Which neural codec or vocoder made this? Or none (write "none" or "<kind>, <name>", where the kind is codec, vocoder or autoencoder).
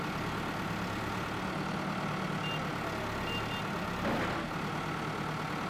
none